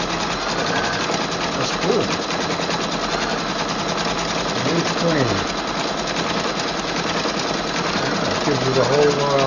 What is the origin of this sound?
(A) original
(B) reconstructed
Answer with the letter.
A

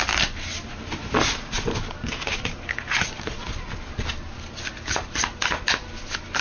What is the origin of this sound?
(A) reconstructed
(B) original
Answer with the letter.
B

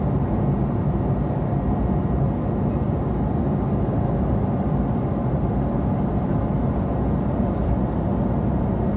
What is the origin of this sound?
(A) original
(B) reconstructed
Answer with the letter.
A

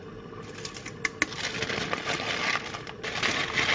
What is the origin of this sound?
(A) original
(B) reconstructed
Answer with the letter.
A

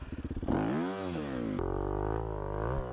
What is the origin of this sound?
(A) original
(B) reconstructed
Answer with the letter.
A